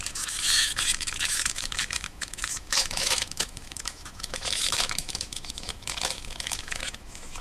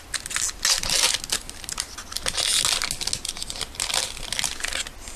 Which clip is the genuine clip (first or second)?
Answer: second